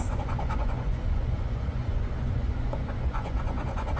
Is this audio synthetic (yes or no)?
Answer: yes